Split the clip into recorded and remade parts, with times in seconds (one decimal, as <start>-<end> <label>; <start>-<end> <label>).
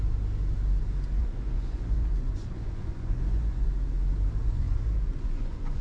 0.0-1.2 recorded; 1.2-3.7 remade; 3.7-4.4 recorded; 4.4-5.8 remade